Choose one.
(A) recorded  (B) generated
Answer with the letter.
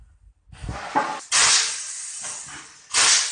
A